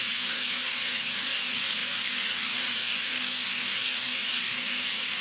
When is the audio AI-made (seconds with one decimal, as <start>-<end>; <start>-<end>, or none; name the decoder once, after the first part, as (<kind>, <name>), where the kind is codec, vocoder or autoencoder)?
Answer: 0.0-5.2 (codec, DAC)